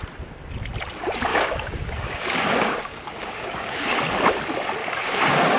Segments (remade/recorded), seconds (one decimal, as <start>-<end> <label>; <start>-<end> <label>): 0.0-1.3 recorded; 1.3-4.0 remade; 4.0-4.8 recorded; 4.8-5.6 remade